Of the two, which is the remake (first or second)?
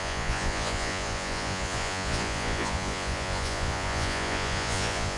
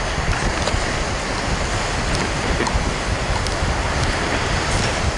first